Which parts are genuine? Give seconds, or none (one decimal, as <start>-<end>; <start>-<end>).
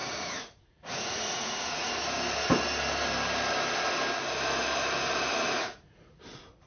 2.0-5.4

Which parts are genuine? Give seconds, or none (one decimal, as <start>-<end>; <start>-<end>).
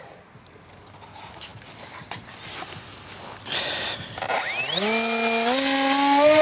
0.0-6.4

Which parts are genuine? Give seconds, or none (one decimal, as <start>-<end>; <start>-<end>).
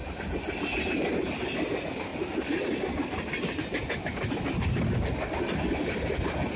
0.0-6.6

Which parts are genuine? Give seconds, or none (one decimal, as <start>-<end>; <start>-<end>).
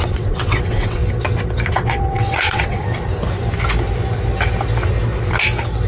1.0-1.7; 2.8-5.9